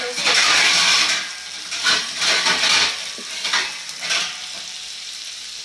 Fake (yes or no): yes